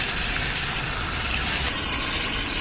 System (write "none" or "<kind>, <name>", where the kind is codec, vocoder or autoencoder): none